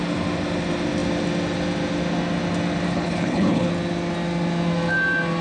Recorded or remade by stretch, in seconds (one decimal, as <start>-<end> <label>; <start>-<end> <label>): 0.0-2.9 recorded; 2.9-3.7 remade; 3.7-5.4 recorded